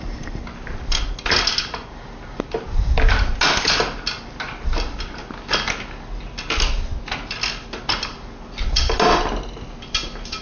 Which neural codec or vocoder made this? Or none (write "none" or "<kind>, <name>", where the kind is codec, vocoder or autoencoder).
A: none